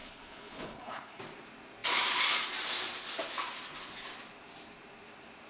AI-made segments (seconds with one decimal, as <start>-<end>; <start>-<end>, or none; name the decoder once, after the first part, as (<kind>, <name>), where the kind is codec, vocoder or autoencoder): 0.0-1.2 (codec, HILCodec)